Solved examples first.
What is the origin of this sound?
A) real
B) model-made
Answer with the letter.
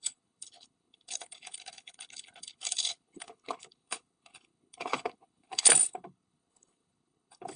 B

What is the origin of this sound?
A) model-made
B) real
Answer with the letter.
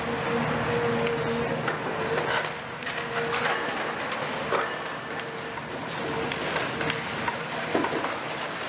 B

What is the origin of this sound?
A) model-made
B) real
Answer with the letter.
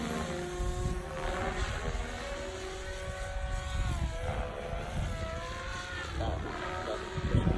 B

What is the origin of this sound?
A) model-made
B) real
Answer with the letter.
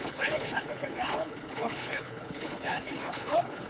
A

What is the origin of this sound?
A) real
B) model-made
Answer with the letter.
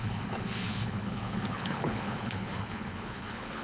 B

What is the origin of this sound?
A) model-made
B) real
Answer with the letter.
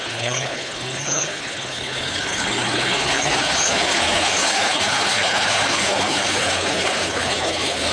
A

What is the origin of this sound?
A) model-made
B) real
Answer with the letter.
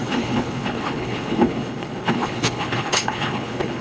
A